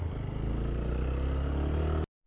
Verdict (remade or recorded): recorded